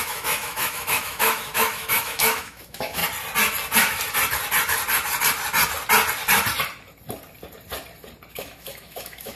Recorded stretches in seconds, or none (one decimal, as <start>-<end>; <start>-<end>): 3.0-8.3